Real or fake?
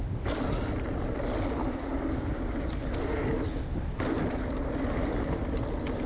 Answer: real